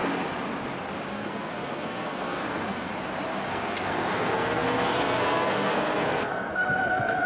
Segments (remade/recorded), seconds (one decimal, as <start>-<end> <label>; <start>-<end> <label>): 0.0-1.1 recorded; 1.1-2.9 remade; 2.9-3.5 recorded; 3.5-7.3 remade